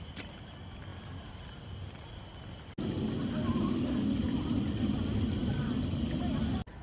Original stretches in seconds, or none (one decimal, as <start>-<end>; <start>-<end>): 0.0-6.8